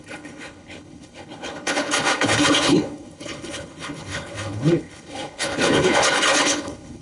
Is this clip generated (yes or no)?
yes